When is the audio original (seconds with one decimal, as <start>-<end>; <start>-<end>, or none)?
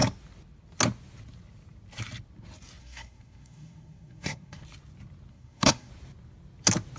0.0-2.8; 4.6-5.3; 5.9-7.0